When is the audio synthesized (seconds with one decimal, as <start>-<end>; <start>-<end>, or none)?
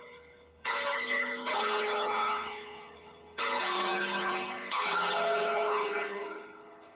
0.0-7.0